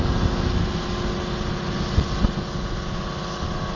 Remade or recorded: recorded